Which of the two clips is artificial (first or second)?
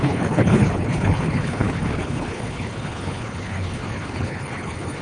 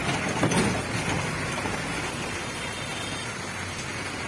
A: first